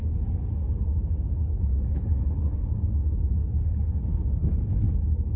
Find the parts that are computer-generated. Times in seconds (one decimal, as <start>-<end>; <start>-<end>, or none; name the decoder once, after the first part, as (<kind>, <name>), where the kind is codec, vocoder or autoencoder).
1.4-2.8 (codec, HILCodec); 3.4-5.4